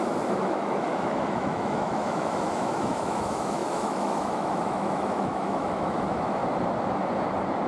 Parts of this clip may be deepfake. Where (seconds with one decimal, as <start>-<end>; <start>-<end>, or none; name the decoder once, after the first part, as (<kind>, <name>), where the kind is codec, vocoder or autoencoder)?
0.0-6.4 (autoencoder, DAC-VAE)